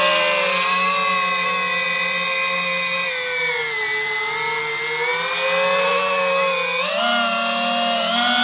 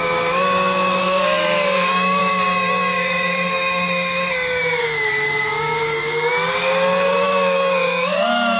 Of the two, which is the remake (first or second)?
second